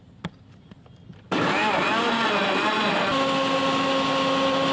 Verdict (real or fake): real